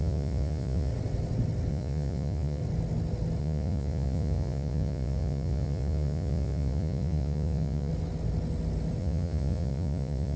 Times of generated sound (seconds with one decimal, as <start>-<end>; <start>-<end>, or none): 0.0-0.9; 1.7-2.6; 3.4-7.9; 9.0-10.4